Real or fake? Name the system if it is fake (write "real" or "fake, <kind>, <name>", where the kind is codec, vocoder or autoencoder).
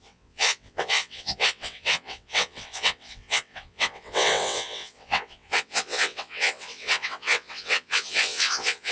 fake, vocoder, WaveNeXt